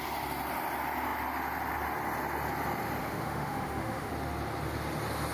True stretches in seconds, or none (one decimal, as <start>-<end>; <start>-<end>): 0.0-3.0; 4.1-5.3